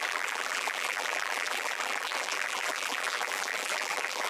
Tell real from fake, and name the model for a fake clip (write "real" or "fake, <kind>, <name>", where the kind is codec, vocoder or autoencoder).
fake, vocoder, BigVGAN v2